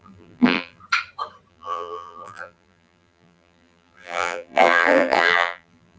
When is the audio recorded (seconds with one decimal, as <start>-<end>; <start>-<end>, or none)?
0.8-1.5